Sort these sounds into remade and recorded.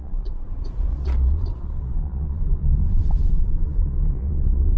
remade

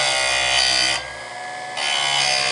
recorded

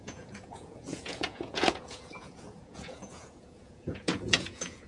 remade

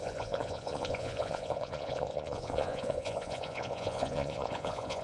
remade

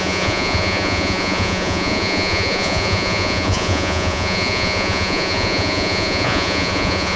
remade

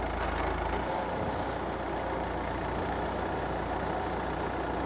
recorded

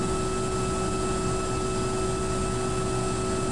recorded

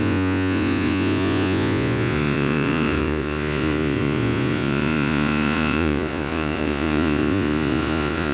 remade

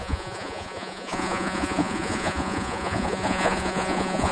remade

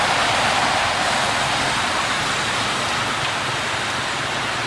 recorded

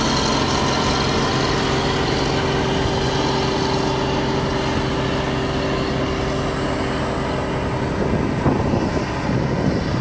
recorded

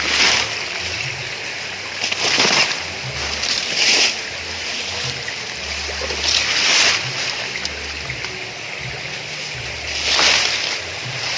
recorded